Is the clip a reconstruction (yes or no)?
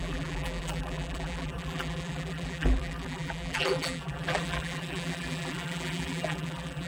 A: yes